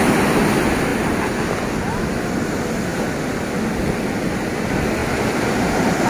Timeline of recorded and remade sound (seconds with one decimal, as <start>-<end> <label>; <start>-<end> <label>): 0.0-5.0 recorded; 5.0-6.1 remade